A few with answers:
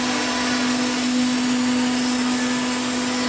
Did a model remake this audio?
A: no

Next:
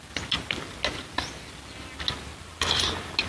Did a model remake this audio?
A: no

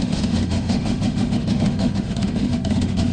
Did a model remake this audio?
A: yes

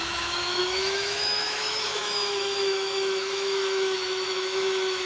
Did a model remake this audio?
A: yes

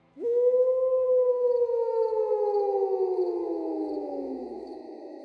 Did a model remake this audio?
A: yes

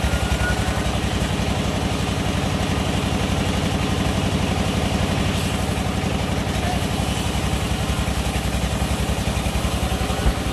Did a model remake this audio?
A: no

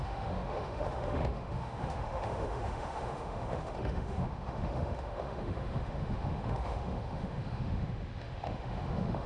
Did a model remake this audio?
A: yes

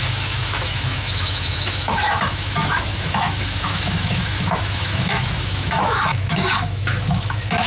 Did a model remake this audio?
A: yes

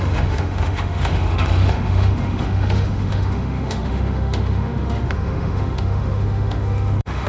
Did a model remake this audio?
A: yes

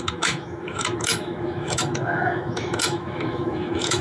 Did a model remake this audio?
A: yes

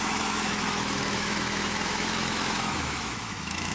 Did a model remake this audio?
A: yes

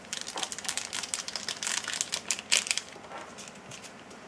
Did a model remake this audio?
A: no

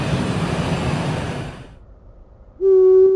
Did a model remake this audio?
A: no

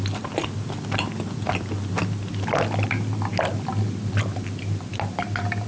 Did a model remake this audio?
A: no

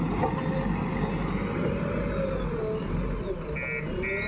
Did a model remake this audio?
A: no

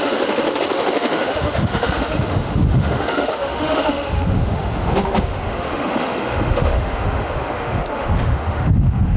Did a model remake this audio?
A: yes